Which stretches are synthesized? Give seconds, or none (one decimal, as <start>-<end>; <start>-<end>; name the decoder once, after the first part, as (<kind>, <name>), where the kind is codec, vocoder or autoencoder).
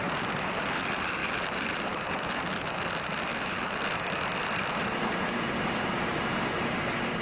0.0-7.2 (vocoder, BigVGAN v2)